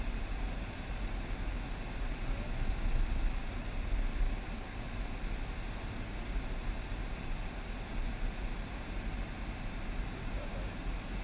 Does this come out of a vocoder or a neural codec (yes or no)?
no